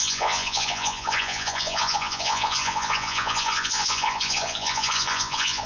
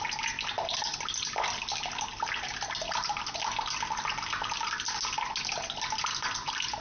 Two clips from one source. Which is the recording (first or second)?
second